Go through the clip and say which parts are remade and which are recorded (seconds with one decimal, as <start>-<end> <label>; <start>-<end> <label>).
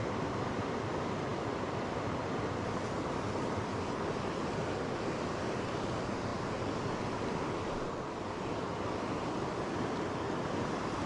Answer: 0.0-11.1 recorded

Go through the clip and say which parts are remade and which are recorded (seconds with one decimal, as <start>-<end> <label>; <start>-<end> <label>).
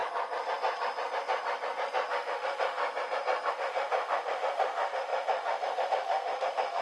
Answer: 0.0-2.1 recorded; 2.1-2.8 remade; 2.8-3.5 recorded; 3.5-6.8 remade